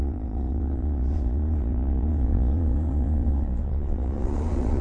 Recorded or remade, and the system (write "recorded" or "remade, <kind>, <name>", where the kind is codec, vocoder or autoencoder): remade, vocoder, Vocos